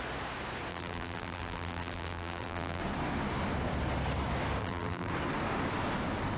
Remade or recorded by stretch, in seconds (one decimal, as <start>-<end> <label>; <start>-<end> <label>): 0.0-0.7 recorded; 0.7-2.8 remade; 2.8-4.6 recorded; 4.6-5.1 remade; 5.1-6.4 recorded